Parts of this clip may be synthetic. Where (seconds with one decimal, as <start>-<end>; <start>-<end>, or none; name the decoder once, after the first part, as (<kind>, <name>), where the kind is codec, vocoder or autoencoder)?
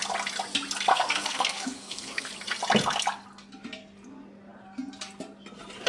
0.9-2.3 (codec, SNAC)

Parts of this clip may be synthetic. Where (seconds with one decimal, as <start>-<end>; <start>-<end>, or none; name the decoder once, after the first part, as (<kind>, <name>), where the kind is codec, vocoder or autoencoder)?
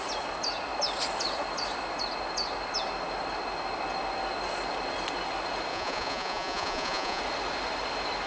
5.7-7.2 (vocoder, Vocos)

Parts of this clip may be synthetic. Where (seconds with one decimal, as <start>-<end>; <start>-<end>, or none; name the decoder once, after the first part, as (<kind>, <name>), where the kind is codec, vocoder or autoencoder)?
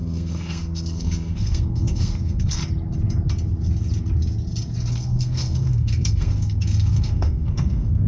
0.0-2.6 (codec, SNAC); 4.9-8.1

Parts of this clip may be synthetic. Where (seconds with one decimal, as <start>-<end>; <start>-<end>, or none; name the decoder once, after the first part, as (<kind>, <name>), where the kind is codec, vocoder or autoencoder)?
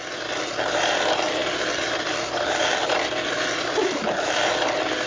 none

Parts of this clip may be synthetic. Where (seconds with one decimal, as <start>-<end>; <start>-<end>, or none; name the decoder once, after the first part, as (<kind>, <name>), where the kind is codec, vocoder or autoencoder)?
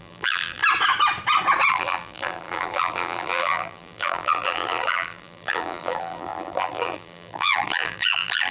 0.0-0.6 (vocoder, BigVGAN v2); 1.7-8.5